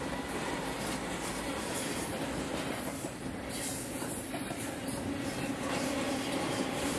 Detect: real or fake real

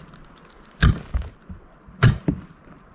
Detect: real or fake real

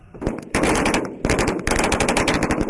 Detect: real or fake real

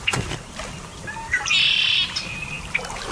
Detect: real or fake real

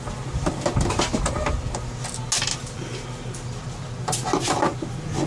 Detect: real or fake real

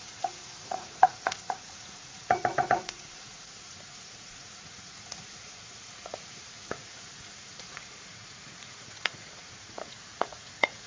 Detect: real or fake fake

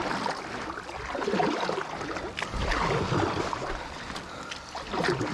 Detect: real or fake real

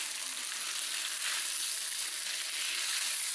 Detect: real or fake real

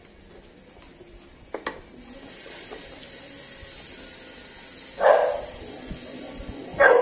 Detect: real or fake real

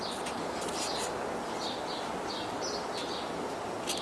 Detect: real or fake real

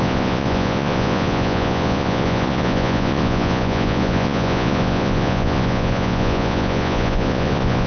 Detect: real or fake fake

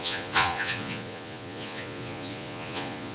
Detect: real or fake fake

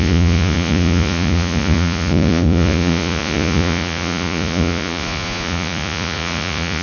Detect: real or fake fake